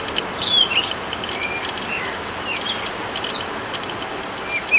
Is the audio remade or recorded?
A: recorded